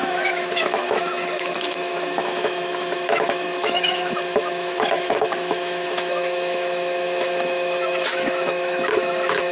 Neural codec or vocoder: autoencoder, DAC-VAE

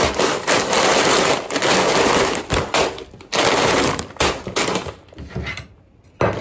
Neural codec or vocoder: none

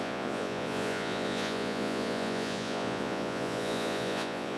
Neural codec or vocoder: vocoder, Vocos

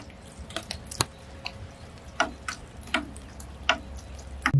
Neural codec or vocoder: none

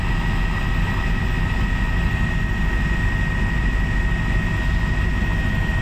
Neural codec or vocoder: none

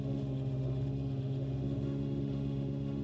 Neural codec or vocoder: autoencoder, DAC-VAE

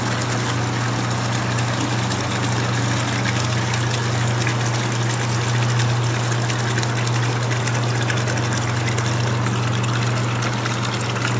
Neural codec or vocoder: none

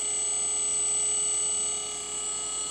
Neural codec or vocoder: none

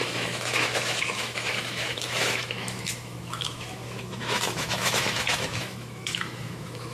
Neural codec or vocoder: autoencoder, DAC-VAE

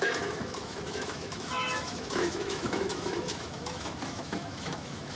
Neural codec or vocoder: autoencoder, DAC-VAE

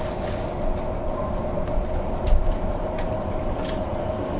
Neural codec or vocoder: vocoder, BigVGAN v2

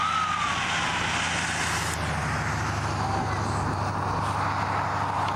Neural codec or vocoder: none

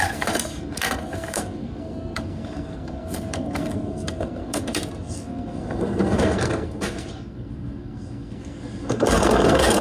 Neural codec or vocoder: codec, SNAC